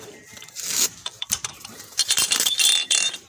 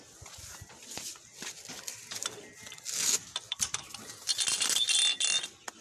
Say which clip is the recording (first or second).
second